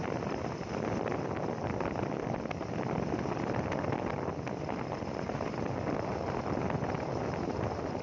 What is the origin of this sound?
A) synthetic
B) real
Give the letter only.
B